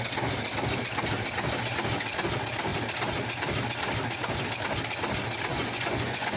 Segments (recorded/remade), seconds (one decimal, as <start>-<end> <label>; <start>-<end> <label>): 0.0-5.5 recorded; 5.5-6.4 remade